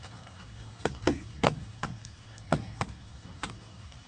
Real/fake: fake